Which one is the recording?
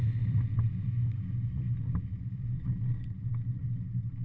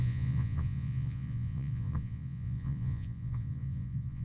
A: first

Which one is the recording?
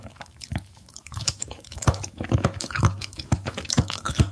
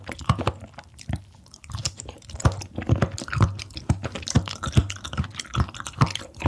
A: second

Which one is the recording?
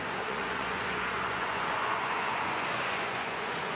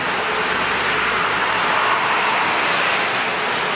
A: second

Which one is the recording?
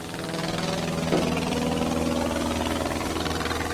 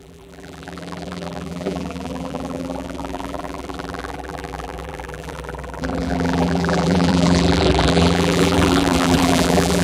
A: first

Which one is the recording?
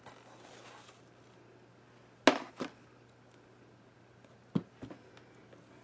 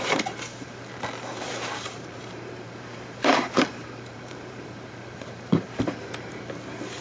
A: first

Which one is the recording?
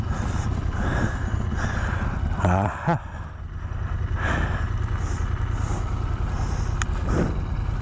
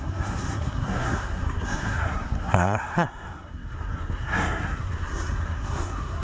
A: first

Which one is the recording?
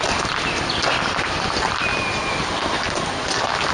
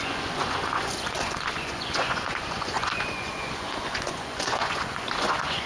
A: first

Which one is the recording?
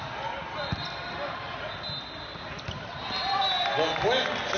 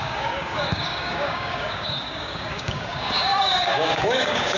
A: first